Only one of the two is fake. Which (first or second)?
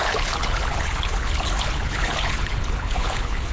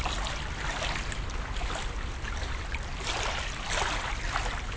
first